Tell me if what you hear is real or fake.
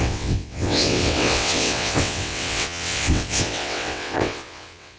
fake